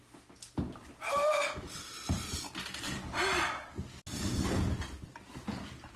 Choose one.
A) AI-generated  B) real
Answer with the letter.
B